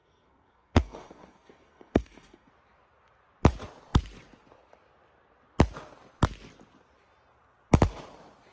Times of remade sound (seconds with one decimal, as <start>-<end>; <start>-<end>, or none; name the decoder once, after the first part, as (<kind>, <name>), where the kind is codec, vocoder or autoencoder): 0.0-2.5 (codec, SNAC)